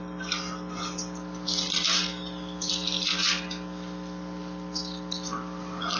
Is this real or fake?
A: real